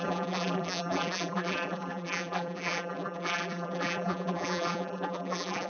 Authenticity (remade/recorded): remade